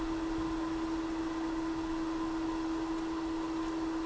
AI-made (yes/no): no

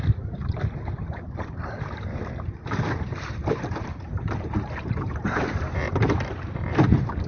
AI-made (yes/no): yes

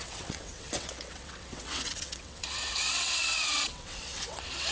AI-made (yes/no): yes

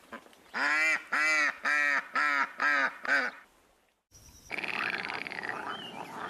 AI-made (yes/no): no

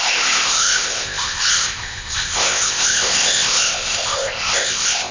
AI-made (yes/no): yes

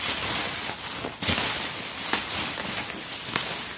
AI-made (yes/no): no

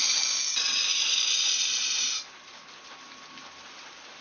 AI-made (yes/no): no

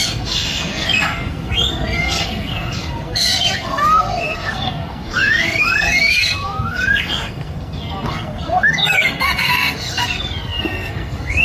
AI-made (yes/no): yes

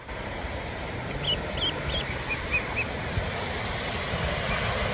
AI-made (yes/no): no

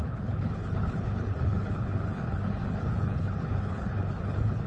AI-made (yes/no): yes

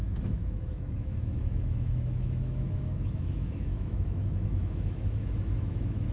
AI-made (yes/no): yes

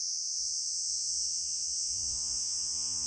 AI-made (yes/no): yes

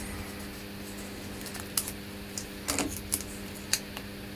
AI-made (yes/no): no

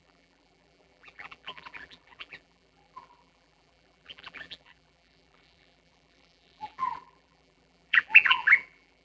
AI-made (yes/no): yes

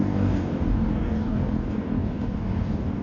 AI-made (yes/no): yes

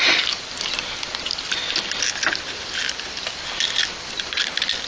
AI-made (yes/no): no